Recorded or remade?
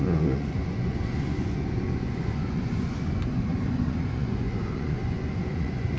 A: remade